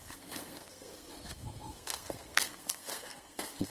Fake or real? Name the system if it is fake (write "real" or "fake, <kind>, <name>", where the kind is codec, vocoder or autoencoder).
fake, codec, SNAC